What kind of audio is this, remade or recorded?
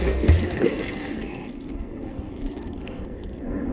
remade